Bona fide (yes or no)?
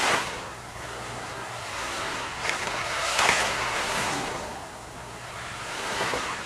no